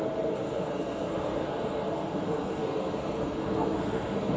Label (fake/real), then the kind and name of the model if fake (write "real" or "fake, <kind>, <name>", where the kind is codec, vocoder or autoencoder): fake, codec, SNAC